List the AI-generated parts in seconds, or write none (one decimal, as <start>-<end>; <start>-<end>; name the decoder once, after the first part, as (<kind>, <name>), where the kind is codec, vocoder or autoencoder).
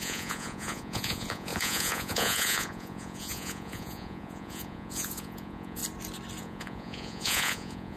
0.0-5.8 (vocoder, Vocos); 6.4-8.0